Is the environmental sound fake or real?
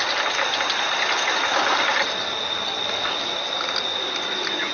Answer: real